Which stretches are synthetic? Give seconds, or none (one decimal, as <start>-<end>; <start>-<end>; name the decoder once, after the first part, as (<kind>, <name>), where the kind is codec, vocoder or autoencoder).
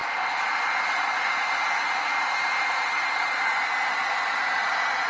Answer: none